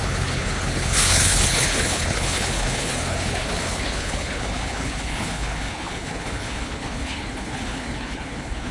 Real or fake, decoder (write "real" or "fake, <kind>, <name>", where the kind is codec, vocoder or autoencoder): fake, codec, HILCodec